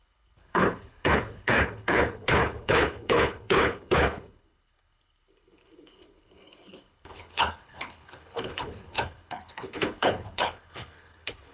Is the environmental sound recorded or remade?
remade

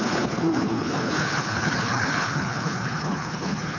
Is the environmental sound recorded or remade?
remade